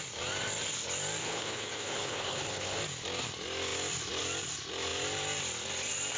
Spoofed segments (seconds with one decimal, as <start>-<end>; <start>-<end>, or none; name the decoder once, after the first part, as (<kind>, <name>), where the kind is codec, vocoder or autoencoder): 1.2-2.8 (codec, HILCodec)